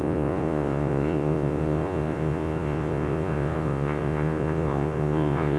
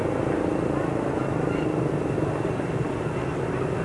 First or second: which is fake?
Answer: first